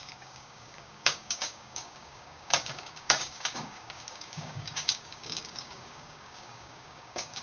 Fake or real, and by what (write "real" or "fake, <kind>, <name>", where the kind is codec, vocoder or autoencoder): fake, codec, DAC